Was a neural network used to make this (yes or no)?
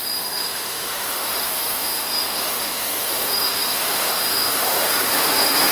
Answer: yes